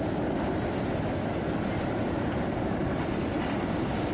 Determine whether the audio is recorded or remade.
recorded